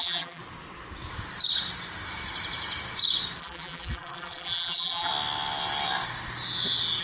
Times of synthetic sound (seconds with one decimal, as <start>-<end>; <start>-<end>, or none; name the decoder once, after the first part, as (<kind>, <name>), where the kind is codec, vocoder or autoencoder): 0.0-0.4 (vocoder, BigVGAN v2); 3.4-5.1